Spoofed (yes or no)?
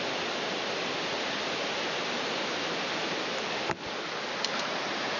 no